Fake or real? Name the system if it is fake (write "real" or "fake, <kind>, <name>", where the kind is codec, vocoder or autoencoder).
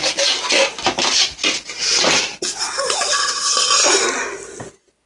real